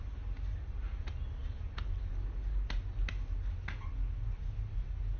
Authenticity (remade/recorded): recorded